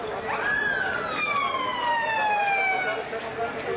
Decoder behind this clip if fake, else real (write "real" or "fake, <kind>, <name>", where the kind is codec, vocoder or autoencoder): real